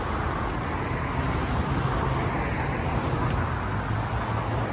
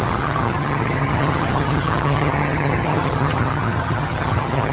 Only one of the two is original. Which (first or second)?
first